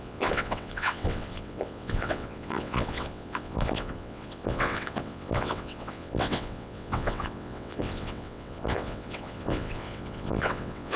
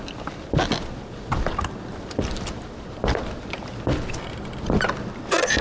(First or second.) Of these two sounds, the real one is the second